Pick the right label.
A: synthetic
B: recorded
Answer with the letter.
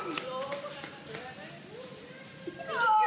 B